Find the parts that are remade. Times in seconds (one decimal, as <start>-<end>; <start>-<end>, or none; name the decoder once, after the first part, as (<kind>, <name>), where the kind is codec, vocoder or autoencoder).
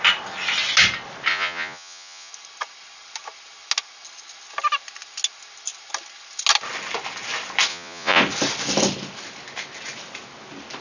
1.3-2.3 (vocoder, Vocos); 7.7-8.2